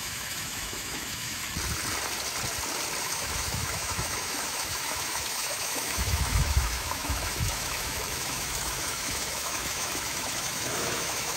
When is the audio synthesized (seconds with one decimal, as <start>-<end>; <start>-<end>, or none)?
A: 0.0-1.4; 3.0-11.4